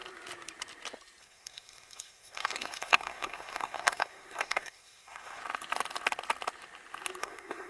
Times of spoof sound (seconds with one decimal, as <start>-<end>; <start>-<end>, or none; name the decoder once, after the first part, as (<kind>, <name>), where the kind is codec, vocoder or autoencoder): 1.2-5.4 (codec, SNAC); 7.2-7.7